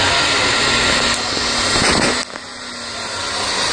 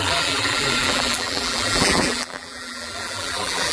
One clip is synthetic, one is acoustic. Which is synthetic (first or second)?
second